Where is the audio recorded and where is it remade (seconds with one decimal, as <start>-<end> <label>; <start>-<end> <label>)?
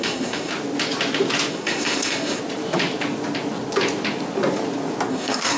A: 0.0-0.5 remade; 0.5-1.5 recorded; 1.5-2.4 remade; 2.4-5.1 recorded; 5.1-5.6 remade